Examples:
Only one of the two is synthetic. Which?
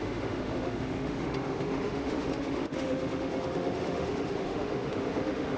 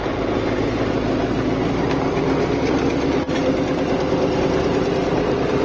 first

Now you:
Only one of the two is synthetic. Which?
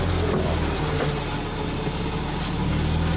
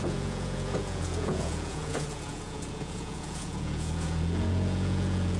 second